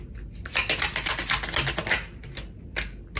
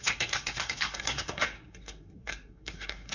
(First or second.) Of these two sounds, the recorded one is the first